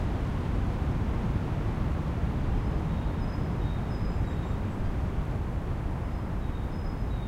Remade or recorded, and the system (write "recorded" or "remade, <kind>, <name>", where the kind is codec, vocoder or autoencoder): recorded